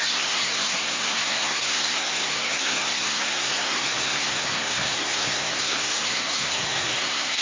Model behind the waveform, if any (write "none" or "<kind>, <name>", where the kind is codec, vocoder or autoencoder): codec, SNAC